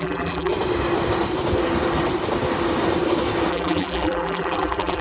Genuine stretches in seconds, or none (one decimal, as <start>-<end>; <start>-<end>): 0.5-3.5